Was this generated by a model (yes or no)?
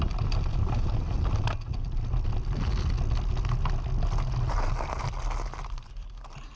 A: no